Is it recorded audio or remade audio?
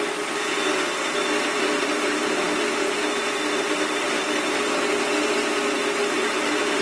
recorded